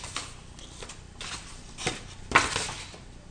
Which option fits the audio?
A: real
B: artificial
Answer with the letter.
B